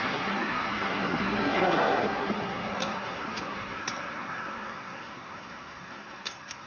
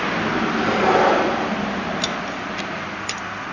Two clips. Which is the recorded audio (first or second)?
second